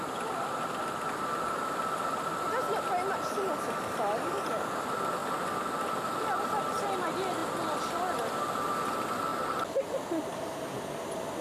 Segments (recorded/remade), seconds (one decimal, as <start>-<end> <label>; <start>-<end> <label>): 0.0-11.4 recorded